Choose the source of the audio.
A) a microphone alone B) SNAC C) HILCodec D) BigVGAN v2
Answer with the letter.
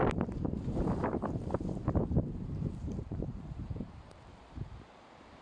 D